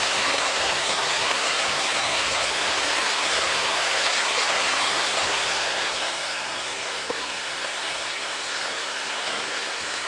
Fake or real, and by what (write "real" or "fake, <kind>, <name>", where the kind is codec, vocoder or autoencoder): fake, codec, SNAC